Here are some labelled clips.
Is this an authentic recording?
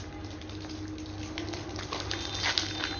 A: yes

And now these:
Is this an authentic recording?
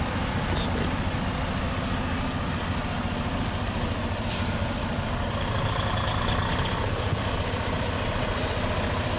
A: yes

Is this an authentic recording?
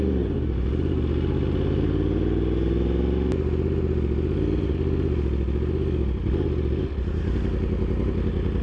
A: yes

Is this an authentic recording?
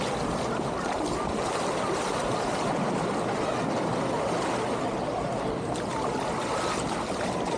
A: yes